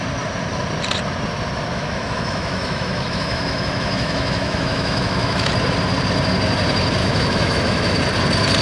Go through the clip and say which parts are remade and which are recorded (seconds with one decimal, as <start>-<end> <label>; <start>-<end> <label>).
0.0-1.7 recorded; 1.7-5.5 remade; 5.5-7.0 recorded; 7.0-8.0 remade; 8.0-8.6 recorded